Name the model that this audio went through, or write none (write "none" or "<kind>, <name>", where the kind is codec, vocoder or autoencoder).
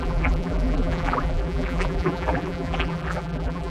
vocoder, BigVGAN v2